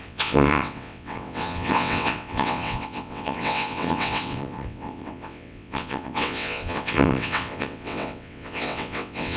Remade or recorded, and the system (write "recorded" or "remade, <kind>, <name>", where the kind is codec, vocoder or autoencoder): remade, vocoder, WaveNeXt